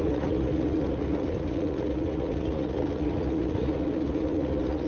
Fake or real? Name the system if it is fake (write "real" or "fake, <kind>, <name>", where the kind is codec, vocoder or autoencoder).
fake, vocoder, Vocos